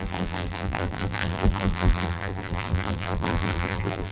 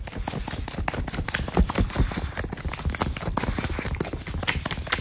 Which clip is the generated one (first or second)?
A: first